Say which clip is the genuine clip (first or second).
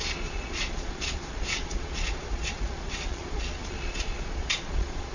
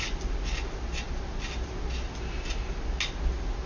second